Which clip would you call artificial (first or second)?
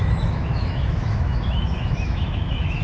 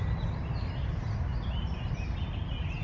first